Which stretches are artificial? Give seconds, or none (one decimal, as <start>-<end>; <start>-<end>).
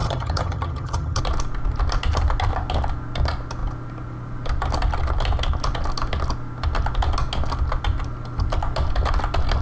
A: 0.0-1.2